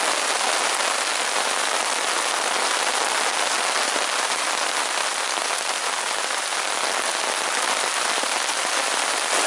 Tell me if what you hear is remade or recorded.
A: recorded